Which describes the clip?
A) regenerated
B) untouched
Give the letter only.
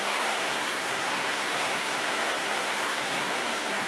A